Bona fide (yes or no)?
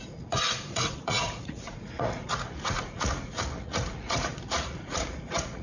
no